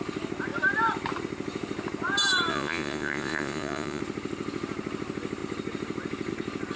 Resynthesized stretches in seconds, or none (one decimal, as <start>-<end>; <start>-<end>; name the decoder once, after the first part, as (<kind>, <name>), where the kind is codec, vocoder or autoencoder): 2.5-4.0 (vocoder, Vocos)